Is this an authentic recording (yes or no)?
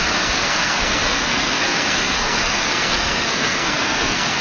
no